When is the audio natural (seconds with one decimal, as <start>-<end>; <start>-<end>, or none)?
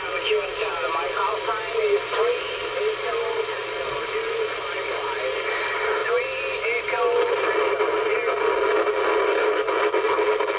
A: 0.0-10.6